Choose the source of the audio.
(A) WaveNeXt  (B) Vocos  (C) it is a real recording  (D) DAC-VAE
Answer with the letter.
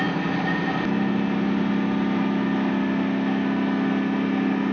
C